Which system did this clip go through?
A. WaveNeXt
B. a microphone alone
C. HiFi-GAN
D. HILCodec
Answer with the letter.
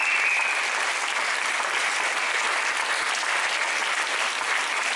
B